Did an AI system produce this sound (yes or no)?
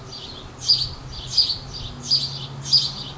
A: no